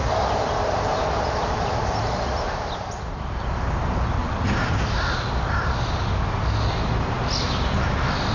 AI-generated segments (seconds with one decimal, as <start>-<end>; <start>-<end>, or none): none